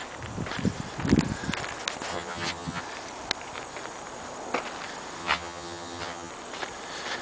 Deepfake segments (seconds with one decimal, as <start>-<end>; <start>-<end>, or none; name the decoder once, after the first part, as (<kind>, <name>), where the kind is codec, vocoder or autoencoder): 2.1-2.8 (vocoder, HiFi-GAN); 5.2-6.3